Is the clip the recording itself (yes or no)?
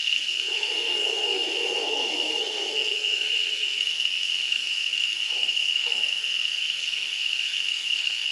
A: no